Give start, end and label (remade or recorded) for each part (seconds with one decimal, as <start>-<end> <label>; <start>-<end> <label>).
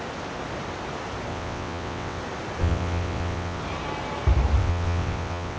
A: 0.0-1.3 recorded; 1.3-2.2 remade; 2.2-2.6 recorded; 2.6-3.6 remade; 3.6-4.6 recorded; 4.6-5.6 remade